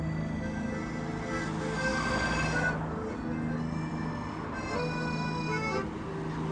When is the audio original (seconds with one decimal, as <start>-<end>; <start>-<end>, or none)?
0.0-6.5